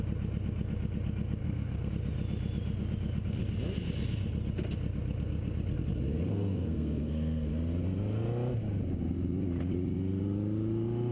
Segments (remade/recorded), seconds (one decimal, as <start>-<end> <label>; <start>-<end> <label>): 0.0-1.4 recorded; 1.4-1.9 remade; 1.9-6.3 recorded; 6.3-7.5 remade; 7.5-11.1 recorded